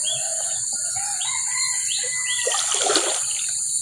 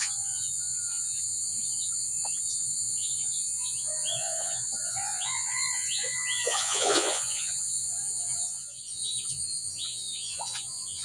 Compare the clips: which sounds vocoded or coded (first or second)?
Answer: second